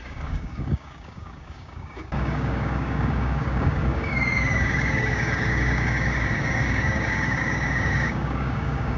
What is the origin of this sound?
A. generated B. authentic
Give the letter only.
A